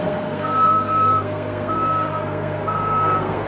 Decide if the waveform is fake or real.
fake